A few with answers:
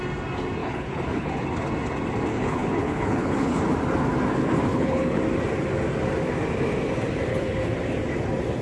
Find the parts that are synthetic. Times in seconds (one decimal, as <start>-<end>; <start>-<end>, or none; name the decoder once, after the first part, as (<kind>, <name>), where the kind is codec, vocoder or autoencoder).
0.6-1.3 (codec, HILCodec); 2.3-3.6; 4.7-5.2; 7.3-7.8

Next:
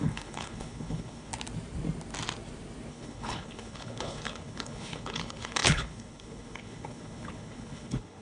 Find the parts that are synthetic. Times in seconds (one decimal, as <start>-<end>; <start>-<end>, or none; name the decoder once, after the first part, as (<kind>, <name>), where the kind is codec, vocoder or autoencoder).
0.0-1.3 (codec, HILCodec); 2.9-8.2

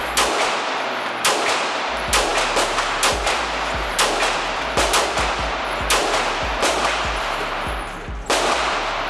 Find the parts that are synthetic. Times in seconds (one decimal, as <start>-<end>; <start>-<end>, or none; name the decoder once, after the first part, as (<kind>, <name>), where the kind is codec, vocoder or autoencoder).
none

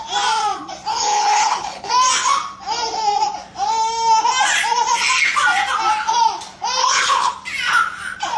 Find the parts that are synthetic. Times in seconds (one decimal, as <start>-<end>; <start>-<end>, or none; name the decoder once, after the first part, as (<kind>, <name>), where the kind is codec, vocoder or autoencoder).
0.9-1.9 (codec, HILCodec); 6.8-7.3

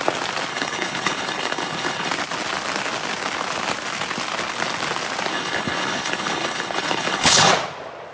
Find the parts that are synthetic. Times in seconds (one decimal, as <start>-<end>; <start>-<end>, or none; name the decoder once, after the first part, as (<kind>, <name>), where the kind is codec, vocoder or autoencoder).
0.5-2.1 (codec, HILCodec); 5.3-7.5

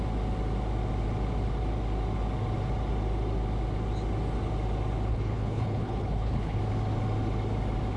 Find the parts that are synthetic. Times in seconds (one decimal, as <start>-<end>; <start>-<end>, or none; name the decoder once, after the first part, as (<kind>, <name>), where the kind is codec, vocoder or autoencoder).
5.1-6.6 (codec, HILCodec)

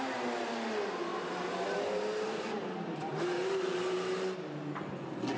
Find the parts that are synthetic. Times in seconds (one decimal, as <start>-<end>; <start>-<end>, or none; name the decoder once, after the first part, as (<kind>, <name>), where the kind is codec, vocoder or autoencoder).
none